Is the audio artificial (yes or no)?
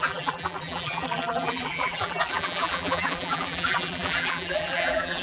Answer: yes